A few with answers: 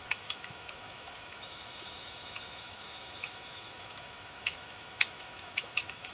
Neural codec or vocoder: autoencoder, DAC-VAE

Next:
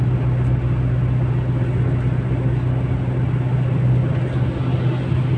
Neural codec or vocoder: none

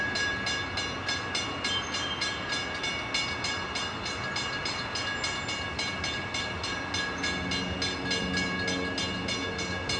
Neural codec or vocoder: none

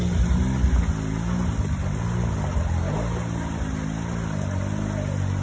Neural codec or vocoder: none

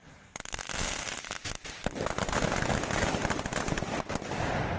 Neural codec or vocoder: none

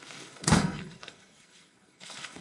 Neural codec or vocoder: codec, SNAC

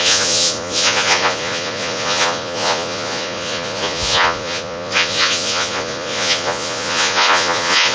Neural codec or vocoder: vocoder, Vocos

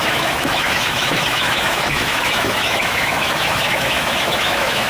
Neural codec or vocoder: autoencoder, DAC-VAE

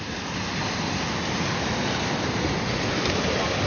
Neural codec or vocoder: none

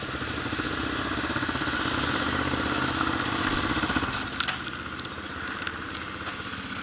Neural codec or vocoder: none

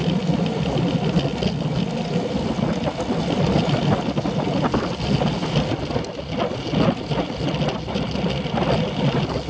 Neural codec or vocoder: none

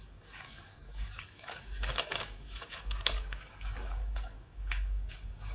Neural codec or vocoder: codec, DAC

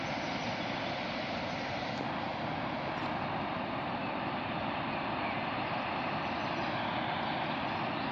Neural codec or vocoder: none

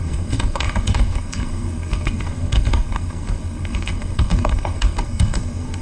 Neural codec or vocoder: codec, SNAC